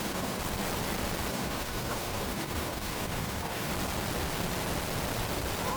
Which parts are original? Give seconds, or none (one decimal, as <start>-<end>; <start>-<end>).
0.4-1.3; 3.7-5.8